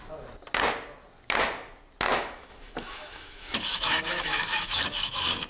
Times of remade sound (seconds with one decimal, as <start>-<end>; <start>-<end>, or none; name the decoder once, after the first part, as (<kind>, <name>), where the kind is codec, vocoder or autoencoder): 2.1-5.5 (autoencoder, DAC-VAE)

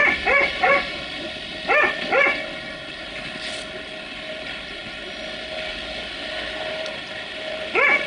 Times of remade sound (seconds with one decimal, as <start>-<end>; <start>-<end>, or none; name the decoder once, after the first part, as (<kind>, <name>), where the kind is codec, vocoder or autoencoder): 4.3-4.8 (vocoder, BigVGAN v2); 6.7-8.1

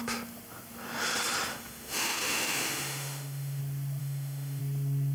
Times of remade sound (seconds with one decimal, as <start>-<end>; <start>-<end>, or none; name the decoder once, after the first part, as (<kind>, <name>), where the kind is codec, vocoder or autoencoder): 1.5-3.6 (autoencoder, DAC-VAE); 4.0-4.6

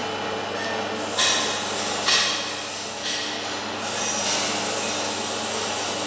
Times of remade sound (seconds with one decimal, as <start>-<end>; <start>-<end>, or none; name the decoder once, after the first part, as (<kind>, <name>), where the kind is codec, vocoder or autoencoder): none

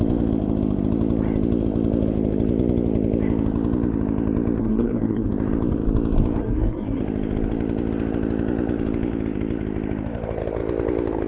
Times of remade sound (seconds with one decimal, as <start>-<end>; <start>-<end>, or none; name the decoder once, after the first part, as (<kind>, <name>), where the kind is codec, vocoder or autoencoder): 4.6-5.3 (codec, SNAC); 6.4-7.0

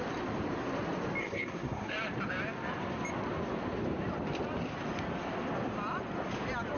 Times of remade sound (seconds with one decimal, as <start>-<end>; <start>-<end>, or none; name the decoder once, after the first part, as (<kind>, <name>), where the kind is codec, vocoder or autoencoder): 1.2-1.9 (codec, SNAC)

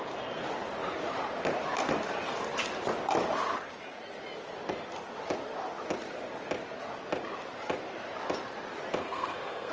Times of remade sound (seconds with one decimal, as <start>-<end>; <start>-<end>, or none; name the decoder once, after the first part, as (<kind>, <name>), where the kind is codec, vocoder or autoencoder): 9.0-9.7 (codec, SNAC)